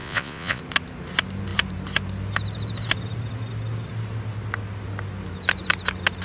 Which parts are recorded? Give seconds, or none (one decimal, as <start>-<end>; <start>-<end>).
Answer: 0.6-6.2